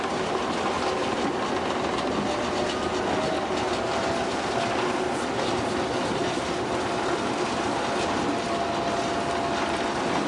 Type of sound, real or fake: real